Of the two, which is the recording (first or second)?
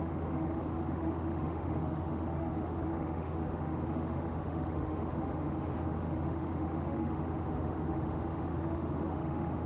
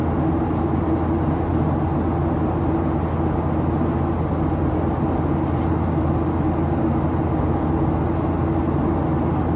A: second